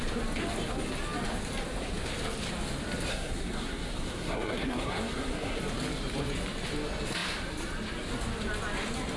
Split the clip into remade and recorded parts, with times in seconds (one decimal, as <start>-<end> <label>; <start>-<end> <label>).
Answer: 0.0-3.1 recorded; 3.1-5.6 remade; 5.6-9.2 recorded